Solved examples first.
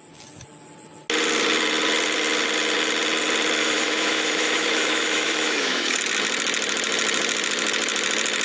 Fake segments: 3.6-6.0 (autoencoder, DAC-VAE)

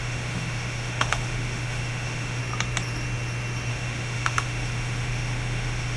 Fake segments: 0.0-2.4 (autoencoder, DAC-VAE); 3.7-6.0

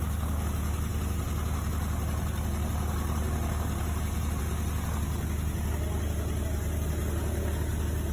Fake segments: none

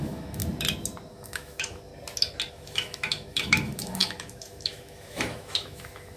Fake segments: 0.0-0.4 (autoencoder, DAC-VAE); 1.1-1.9; 2.5-6.2